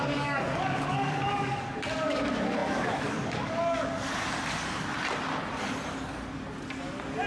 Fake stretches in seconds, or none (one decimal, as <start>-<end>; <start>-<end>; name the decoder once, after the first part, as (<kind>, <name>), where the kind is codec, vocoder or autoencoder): 0.0-4.1 (codec, DAC)